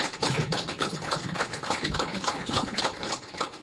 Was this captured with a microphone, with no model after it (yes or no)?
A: no